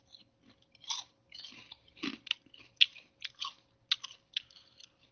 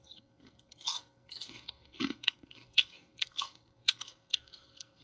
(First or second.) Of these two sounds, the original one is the first